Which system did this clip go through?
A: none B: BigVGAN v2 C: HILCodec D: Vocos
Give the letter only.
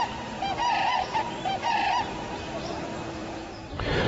B